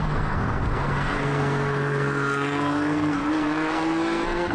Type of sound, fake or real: fake